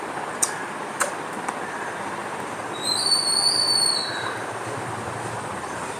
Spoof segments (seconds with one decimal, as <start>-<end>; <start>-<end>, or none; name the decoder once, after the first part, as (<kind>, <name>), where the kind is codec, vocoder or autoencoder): 0.0-6.0 (vocoder, BigVGAN v2)